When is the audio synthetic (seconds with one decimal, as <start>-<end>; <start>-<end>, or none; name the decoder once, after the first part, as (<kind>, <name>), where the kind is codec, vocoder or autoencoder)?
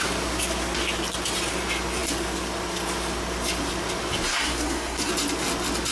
4.3-5.1 (codec, SNAC)